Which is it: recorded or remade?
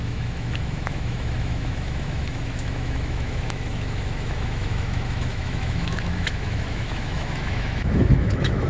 remade